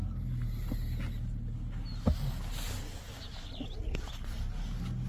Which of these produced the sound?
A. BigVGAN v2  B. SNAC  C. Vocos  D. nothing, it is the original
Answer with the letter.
D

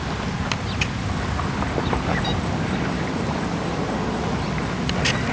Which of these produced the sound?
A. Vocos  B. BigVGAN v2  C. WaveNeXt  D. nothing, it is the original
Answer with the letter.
D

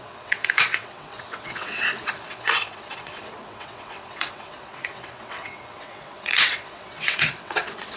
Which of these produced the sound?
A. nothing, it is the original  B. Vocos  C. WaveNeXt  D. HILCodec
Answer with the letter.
C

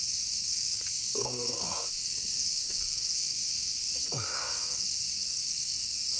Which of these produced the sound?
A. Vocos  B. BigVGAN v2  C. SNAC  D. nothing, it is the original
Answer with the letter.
C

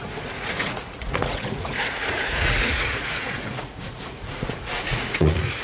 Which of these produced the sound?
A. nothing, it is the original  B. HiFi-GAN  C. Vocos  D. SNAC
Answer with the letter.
C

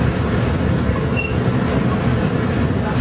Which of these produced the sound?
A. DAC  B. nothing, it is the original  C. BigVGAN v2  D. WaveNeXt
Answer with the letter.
B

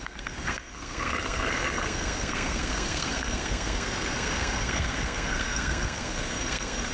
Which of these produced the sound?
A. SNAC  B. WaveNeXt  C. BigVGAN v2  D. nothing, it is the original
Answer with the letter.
A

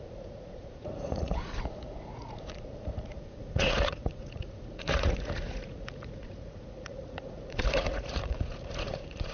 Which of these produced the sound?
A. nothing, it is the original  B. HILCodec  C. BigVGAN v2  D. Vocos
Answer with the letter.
D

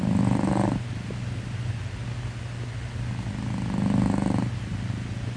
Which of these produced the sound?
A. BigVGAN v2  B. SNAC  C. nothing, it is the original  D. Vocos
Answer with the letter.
C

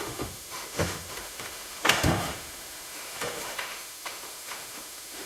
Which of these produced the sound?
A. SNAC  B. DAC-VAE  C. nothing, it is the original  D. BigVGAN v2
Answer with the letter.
B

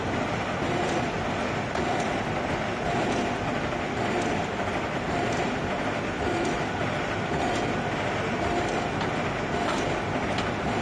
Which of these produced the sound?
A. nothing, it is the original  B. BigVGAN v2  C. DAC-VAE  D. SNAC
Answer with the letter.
A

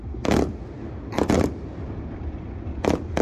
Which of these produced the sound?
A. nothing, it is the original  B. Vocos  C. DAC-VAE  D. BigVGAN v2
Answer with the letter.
A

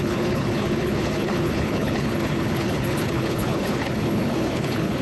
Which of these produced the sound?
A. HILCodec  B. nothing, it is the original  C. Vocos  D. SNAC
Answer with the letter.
A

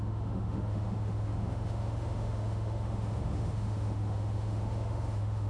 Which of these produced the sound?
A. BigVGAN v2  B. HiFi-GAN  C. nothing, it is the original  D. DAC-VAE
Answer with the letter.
D